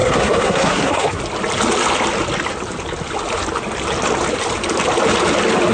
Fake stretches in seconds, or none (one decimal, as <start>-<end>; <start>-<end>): 0.0-1.2